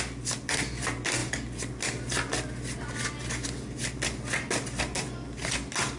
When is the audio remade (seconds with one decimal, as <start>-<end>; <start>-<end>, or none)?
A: none